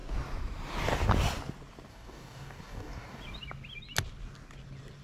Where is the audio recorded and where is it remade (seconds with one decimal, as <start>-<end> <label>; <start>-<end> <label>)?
0.0-1.9 recorded; 1.9-3.2 remade; 3.2-5.0 recorded